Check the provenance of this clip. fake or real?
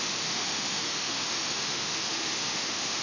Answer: fake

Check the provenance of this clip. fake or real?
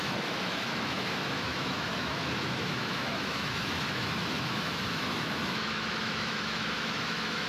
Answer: fake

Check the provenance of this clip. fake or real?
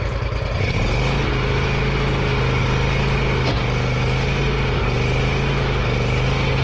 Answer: real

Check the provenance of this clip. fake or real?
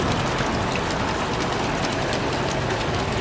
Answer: real